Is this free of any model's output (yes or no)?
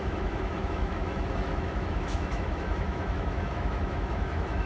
no